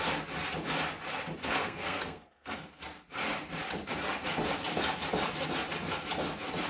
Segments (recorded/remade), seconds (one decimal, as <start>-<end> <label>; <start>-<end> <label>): 0.0-1.4 recorded; 1.4-2.8 remade; 2.8-6.7 recorded